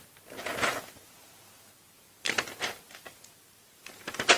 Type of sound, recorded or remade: recorded